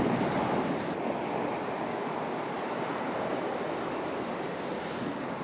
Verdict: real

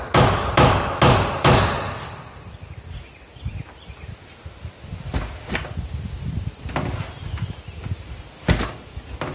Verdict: real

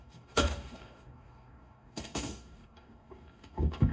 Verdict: fake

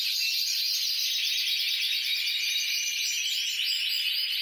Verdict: real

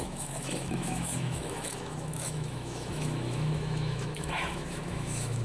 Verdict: fake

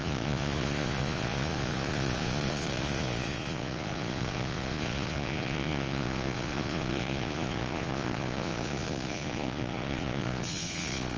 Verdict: fake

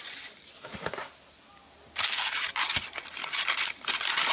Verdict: real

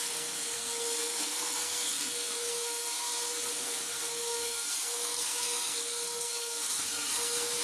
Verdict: fake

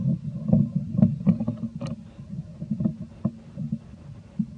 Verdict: real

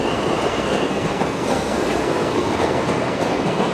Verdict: fake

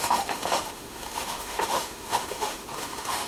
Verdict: fake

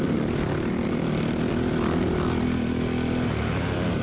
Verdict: real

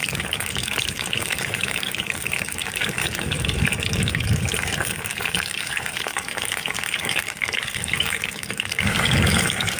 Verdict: fake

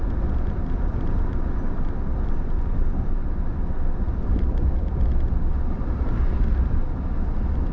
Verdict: real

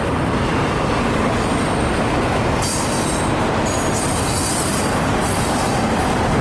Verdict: real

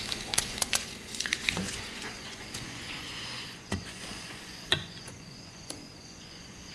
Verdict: fake